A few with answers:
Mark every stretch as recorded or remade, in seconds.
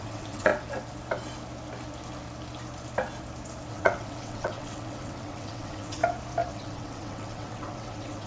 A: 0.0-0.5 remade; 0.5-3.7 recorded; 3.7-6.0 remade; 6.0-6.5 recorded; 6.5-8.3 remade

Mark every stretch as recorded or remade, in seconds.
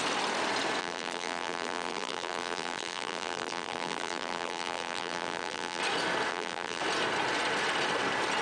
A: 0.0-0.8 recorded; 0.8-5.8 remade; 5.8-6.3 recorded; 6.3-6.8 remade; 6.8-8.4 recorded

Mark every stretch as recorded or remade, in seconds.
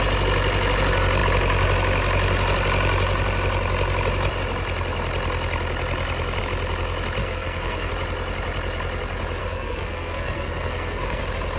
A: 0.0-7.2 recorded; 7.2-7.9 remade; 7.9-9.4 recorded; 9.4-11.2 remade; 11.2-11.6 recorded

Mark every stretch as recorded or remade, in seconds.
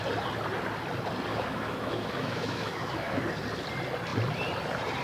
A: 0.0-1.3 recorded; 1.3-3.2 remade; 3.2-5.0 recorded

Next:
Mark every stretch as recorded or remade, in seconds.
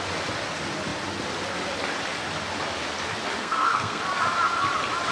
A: 0.0-3.4 recorded; 3.4-4.0 remade; 4.0-5.1 recorded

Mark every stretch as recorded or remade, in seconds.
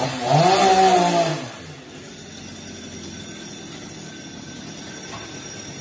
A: 0.0-5.8 recorded